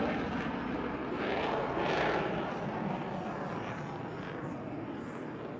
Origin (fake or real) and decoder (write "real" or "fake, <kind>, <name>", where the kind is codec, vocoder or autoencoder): real